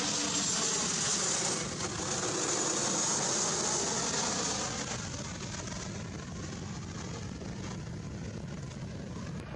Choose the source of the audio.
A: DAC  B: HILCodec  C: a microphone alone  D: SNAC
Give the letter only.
C